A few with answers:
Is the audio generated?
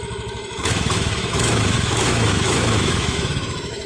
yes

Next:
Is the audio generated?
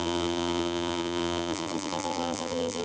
yes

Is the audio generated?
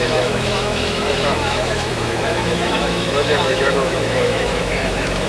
yes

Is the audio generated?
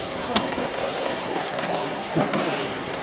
yes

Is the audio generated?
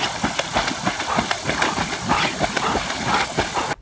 no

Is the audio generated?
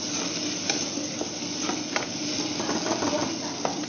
no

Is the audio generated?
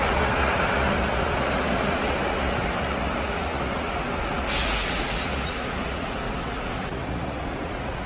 yes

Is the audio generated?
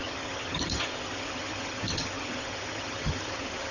yes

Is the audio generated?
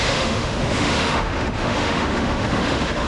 yes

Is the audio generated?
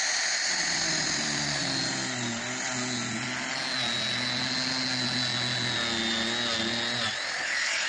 no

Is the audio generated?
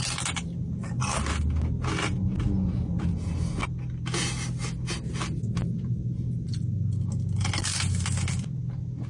no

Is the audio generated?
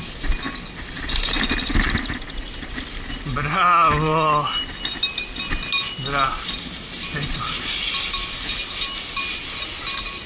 no